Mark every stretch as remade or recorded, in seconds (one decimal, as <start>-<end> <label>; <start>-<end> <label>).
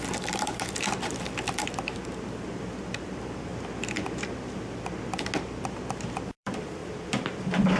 0.0-3.5 remade; 3.5-5.7 recorded; 5.7-6.8 remade; 6.8-7.8 recorded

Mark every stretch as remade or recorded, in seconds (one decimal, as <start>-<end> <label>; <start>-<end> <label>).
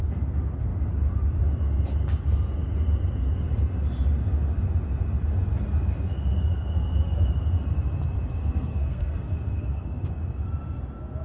0.0-8.4 recorded; 8.4-10.1 remade; 10.1-11.2 recorded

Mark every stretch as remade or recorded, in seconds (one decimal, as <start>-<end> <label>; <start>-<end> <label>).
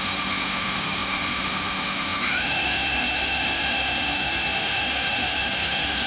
0.0-6.1 remade